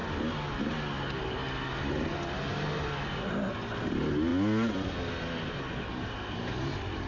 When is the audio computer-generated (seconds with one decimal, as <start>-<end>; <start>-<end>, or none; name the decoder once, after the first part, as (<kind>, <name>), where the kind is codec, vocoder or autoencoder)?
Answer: none